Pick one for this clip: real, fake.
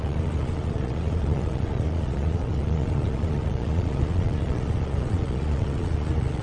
fake